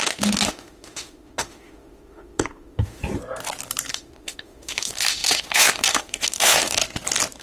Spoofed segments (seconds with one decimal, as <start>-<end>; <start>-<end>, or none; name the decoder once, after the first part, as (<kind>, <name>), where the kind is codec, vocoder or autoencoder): 0.0-3.0 (autoencoder, DAC-VAE); 3.9-6.8